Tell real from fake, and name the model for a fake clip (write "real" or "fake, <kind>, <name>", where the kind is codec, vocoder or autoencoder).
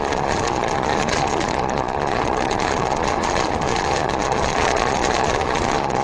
fake, vocoder, Vocos